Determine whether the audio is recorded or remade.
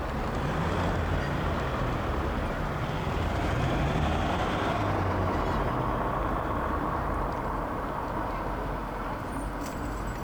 remade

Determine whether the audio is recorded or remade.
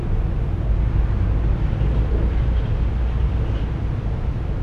recorded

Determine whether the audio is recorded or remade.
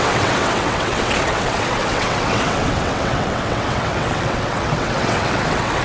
remade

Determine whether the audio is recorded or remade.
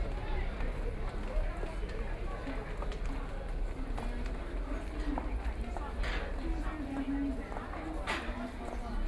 recorded